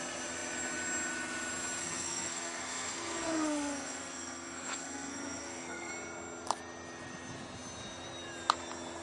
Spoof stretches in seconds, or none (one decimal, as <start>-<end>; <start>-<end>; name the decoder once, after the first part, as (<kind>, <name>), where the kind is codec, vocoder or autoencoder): 1.8-5.9 (codec, SNAC)